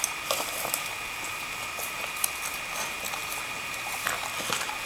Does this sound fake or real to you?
real